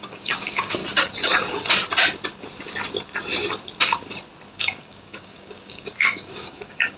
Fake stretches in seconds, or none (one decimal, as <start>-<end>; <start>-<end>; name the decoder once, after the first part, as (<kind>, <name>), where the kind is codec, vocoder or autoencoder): 0.0-0.8 (codec, DAC); 4.5-7.0